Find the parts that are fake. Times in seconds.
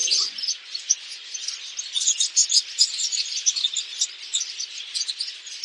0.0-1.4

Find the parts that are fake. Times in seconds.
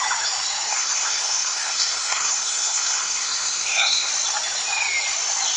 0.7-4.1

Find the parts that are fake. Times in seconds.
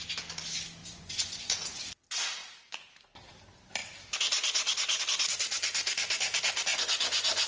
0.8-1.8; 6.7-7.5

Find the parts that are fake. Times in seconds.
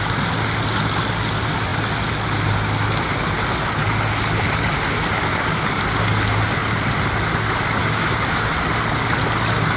5.3-5.8; 7.8-8.5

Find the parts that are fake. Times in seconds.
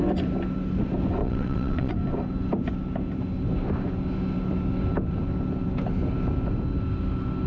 1.2-1.9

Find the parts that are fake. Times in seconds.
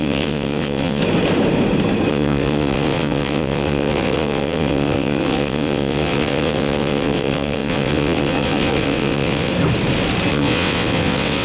0.0-1.0; 2.1-9.5; 10.3-11.4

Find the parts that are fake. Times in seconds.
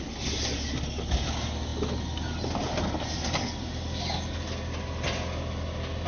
none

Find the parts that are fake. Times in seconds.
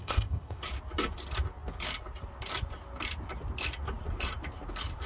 0.0-0.6